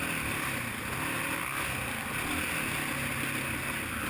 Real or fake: real